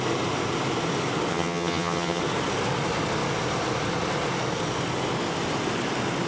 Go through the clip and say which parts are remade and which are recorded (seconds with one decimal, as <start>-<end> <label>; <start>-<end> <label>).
0.0-1.3 recorded; 1.3-2.2 remade; 2.2-6.3 recorded